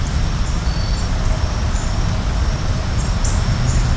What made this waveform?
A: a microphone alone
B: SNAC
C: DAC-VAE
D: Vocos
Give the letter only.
A